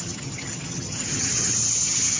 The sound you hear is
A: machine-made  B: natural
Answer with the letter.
A